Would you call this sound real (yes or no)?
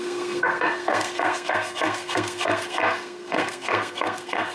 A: no